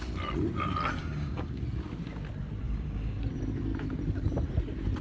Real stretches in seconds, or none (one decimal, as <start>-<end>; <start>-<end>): 0.0-1.0; 1.6-2.6; 3.2-5.0